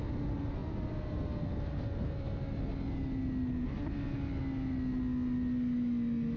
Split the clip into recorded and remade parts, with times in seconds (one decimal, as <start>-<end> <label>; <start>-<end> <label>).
0.0-6.4 recorded